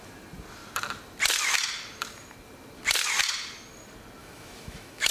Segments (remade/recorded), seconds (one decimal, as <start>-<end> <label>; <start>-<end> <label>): 0.0-4.2 recorded; 4.2-5.1 remade